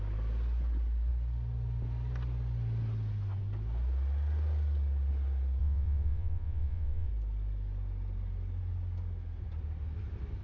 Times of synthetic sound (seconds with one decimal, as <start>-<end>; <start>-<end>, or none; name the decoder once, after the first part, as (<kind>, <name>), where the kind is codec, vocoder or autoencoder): 5.6-7.1 (vocoder, WaveNeXt)